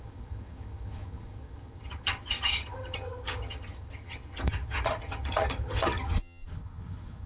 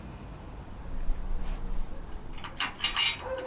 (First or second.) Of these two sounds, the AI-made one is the first